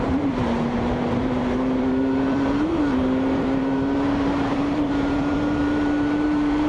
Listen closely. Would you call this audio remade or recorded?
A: remade